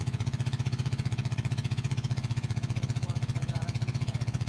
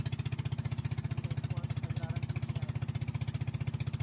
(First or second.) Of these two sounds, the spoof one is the first